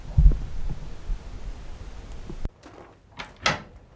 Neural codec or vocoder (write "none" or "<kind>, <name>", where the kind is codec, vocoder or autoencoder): none